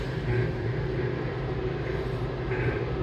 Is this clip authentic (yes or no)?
no